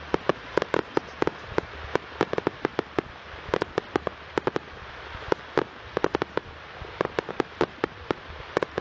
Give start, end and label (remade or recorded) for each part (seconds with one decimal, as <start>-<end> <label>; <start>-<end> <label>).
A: 0.0-8.8 recorded